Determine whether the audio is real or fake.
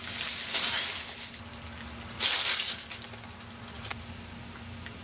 real